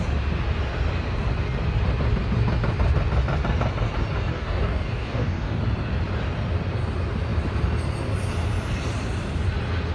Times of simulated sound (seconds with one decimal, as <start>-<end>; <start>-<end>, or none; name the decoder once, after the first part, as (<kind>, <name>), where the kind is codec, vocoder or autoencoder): 4.3-5.6 (codec, DAC)